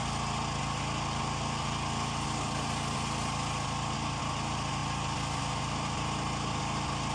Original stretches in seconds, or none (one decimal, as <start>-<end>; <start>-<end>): 0.0-7.1